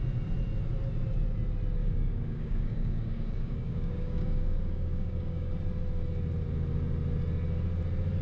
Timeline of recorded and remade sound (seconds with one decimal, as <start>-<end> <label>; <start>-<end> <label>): 0.0-1.8 recorded; 1.8-5.5 remade; 5.5-8.2 recorded

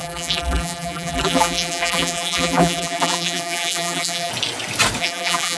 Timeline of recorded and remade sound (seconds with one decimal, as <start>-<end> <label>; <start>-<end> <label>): 0.0-4.3 remade; 4.3-5.0 recorded; 5.0-5.6 remade

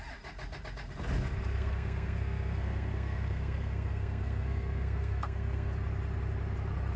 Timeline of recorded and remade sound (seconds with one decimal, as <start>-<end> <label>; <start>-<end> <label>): 0.0-1.5 recorded; 1.5-5.7 remade; 5.7-7.0 recorded

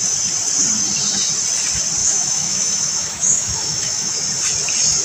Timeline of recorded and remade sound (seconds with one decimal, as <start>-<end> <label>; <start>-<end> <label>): 0.0-2.0 recorded; 2.0-4.2 remade; 4.2-5.0 recorded

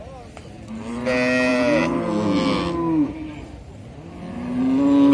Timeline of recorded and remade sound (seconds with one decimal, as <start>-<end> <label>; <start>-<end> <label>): 0.0-5.1 recorded

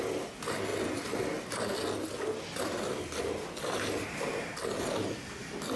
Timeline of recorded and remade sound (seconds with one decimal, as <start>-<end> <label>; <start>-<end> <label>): 0.0-5.8 recorded

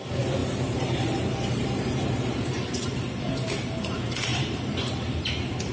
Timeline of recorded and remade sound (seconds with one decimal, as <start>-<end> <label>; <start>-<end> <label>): 0.0-0.4 recorded; 0.4-3.2 remade; 3.2-4.3 recorded; 4.3-5.3 remade; 5.3-5.7 recorded